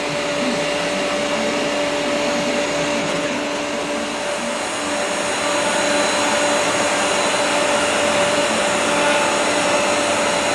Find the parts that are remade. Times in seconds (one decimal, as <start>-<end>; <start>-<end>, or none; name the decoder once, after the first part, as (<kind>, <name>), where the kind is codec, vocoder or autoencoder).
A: 3.0-3.6 (codec, HILCodec)